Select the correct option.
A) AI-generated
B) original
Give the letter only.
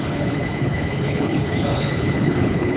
A